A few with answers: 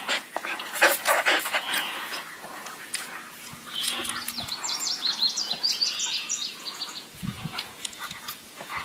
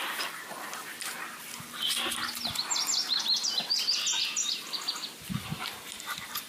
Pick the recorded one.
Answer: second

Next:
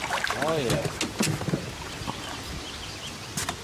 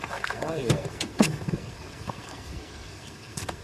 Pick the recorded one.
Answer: first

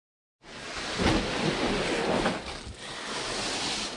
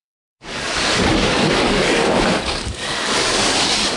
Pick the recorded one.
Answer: first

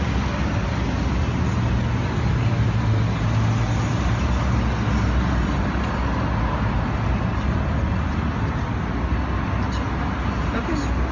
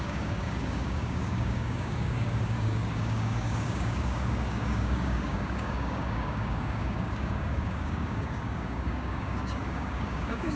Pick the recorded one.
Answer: first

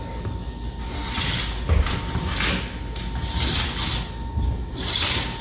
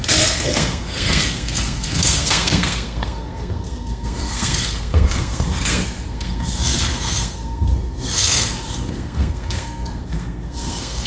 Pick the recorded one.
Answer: first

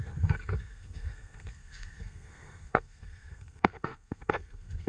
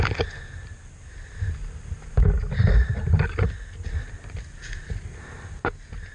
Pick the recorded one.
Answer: second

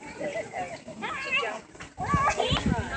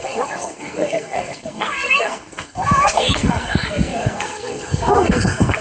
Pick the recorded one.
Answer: first